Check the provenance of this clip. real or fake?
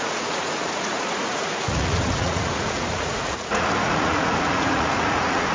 fake